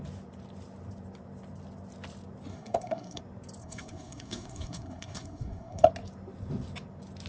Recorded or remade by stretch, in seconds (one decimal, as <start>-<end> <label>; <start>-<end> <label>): 0.0-2.5 recorded; 2.5-3.2 remade; 3.2-3.6 recorded; 3.6-5.9 remade; 5.9-7.3 recorded